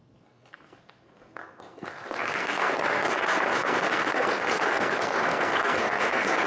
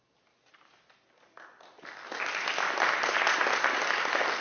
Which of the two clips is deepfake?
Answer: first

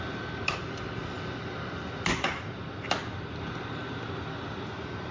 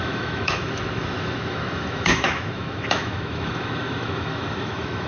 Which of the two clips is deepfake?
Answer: second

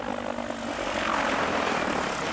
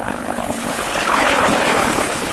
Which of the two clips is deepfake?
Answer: second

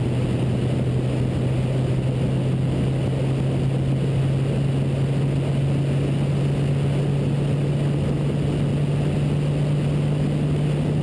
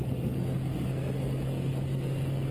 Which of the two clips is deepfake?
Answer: second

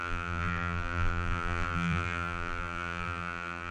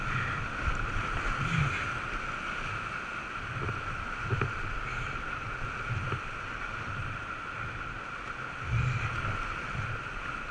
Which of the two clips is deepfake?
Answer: first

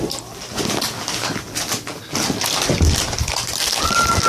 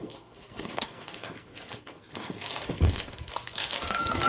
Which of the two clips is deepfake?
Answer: second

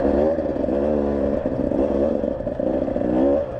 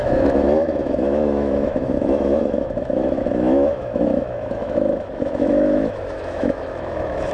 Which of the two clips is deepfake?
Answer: second